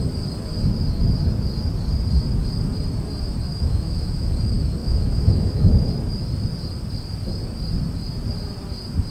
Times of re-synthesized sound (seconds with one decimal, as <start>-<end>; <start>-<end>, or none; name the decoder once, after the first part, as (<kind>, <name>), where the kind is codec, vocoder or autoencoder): 3.5-4.3 (autoencoder, DAC-VAE); 4.8-5.9